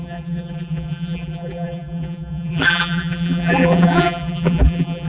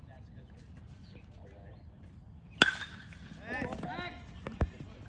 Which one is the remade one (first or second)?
first